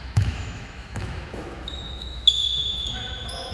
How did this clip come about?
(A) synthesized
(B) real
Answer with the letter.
A